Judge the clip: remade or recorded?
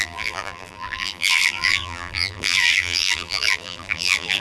remade